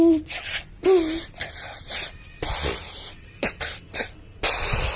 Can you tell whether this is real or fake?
real